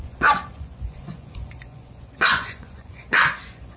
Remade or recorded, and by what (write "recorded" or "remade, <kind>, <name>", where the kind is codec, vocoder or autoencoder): remade, vocoder, Vocos